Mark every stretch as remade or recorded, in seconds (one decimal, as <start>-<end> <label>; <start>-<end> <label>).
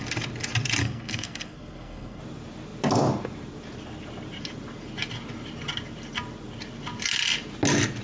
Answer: 0.0-0.8 recorded; 0.8-2.2 remade; 2.2-8.0 recorded